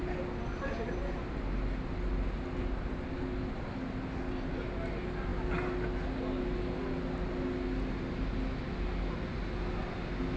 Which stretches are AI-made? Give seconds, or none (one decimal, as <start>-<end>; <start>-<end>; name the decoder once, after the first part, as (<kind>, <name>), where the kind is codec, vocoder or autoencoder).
none